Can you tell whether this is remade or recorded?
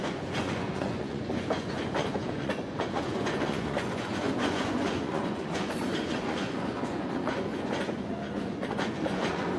remade